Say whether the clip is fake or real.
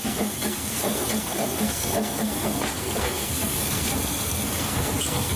fake